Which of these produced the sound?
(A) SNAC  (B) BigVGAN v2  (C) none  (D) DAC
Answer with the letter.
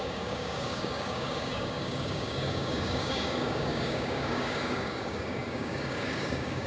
D